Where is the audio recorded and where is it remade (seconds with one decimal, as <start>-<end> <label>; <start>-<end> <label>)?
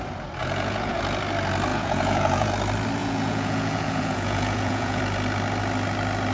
0.0-0.4 recorded; 0.4-1.0 remade; 1.0-1.7 recorded; 1.7-2.5 remade; 2.5-3.0 recorded; 3.0-5.0 remade; 5.0-6.3 recorded